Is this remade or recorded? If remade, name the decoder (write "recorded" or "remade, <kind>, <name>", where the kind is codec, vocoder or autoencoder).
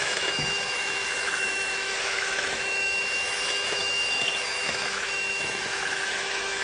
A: remade, autoencoder, DAC-VAE